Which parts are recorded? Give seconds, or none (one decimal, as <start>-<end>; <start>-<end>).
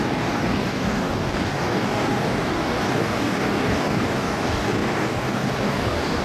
none